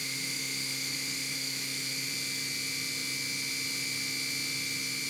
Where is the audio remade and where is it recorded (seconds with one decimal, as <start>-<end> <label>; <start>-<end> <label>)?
0.0-2.1 remade; 2.1-5.1 recorded